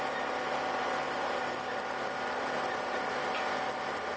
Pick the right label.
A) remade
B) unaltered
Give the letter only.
B